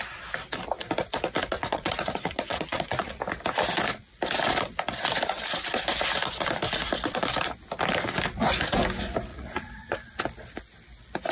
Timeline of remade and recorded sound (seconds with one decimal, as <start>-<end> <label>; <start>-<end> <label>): 0.0-1.4 recorded; 1.4-3.2 remade; 3.2-9.3 recorded; 9.3-10.0 remade; 10.0-11.3 recorded